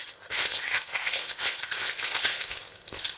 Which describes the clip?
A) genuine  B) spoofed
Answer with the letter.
B